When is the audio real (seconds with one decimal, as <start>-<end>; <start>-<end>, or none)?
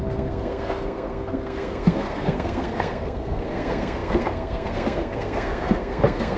none